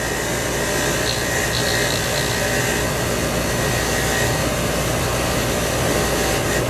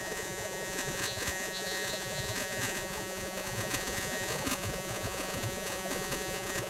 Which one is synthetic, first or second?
second